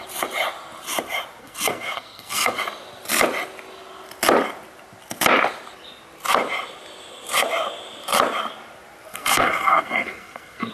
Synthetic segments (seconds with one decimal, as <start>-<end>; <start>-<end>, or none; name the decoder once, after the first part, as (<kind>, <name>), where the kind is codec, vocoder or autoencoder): 1.4-2.6 (codec, SNAC); 9.1-10.7